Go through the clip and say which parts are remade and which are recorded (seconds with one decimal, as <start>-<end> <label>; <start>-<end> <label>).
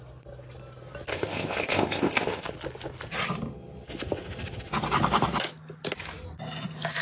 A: 0.0-1.1 recorded; 1.1-2.5 remade; 2.5-7.0 recorded